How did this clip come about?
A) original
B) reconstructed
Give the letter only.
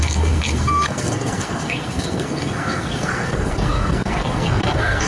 B